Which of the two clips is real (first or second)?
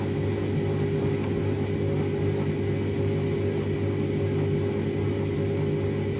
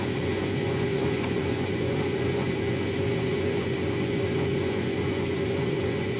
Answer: first